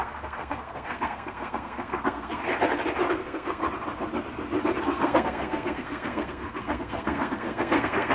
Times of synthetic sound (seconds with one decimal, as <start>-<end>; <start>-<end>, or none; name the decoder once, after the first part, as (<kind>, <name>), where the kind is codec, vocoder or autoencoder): 0.0-2.4 (codec, SNAC); 3.1-3.6; 4.8-8.1